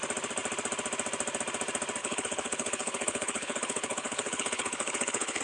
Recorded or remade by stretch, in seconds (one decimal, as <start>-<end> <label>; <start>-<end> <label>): 0.0-2.0 recorded; 2.0-5.4 remade